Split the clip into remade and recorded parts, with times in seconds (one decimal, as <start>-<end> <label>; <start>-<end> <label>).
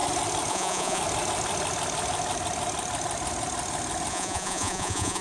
0.0-0.5 recorded; 0.5-1.0 remade; 1.0-4.1 recorded; 4.1-5.2 remade